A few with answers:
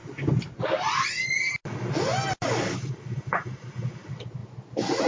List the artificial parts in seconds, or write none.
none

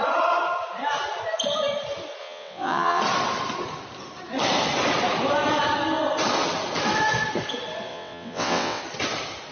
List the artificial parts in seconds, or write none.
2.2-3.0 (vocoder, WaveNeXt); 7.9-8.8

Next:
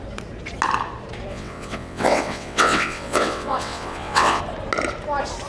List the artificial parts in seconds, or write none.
1.3-4.4 (vocoder, WaveNeXt)

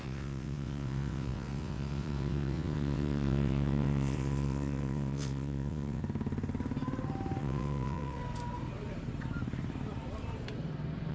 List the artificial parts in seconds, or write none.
0.0-6.0 (vocoder, WaveNeXt); 7.4-8.2

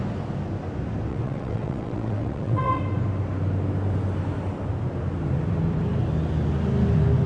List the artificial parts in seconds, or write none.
1.1-2.8 (vocoder, WaveNeXt)